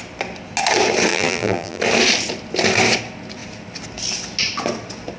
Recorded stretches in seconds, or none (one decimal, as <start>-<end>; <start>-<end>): 0.0-1.1; 1.8-5.2